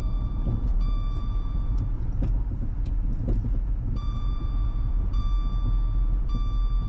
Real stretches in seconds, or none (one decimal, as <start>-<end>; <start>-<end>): 2.3-3.4; 5.2-6.9